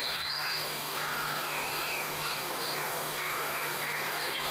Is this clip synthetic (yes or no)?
yes